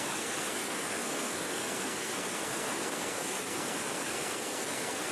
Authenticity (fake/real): fake